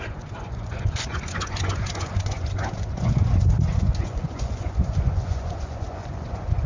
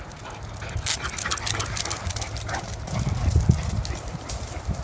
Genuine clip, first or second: second